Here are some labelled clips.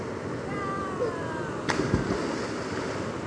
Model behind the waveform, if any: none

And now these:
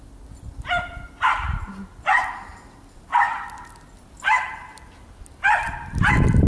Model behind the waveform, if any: none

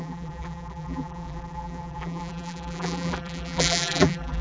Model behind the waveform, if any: vocoder, BigVGAN v2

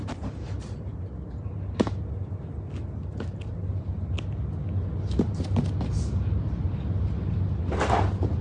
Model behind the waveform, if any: none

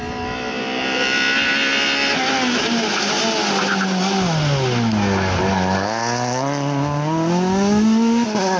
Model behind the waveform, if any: none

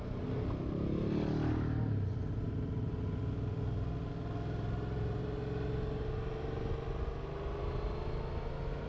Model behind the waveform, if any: none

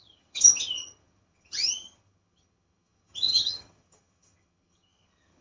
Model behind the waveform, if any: vocoder, HiFi-GAN